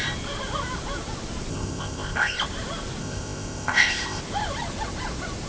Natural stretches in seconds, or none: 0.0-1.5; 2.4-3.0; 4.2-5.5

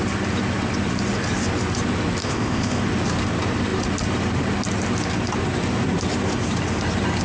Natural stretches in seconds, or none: 0.0-2.2; 2.8-7.2

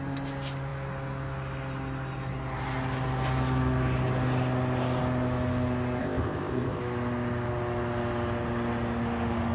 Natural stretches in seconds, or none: 0.0-6.0; 6.8-9.5

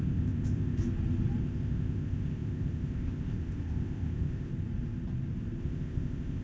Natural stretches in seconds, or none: 0.8-1.4; 4.5-5.6

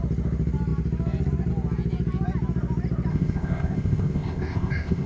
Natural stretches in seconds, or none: 0.0-3.1

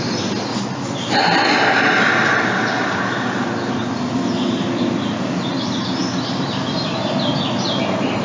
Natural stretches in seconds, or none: 0.0-8.2

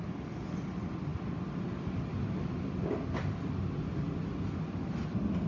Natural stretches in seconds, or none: 0.0-5.5